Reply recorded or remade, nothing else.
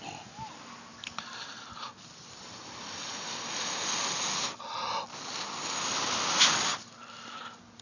recorded